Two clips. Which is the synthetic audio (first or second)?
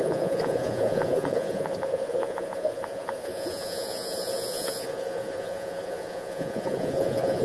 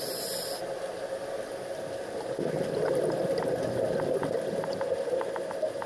first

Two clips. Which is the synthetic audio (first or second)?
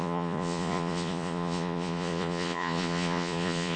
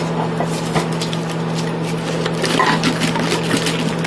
first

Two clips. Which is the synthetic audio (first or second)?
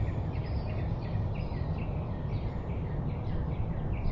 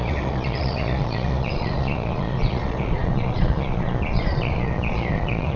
second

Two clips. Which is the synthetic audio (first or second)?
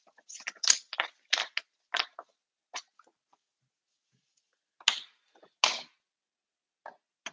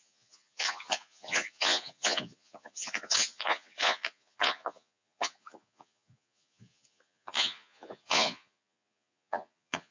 second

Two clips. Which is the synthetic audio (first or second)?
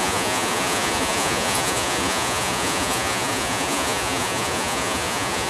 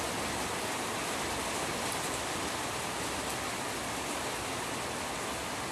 first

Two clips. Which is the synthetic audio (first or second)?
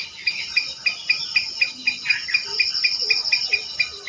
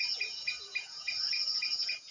second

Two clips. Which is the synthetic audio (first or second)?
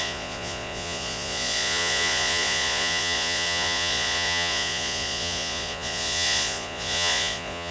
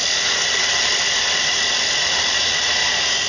first